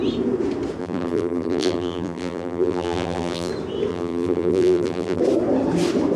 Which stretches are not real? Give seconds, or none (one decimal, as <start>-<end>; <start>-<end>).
0.8-3.5; 3.9-5.2